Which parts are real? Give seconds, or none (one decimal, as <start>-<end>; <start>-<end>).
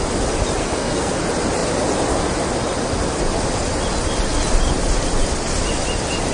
0.0-0.6; 1.1-6.3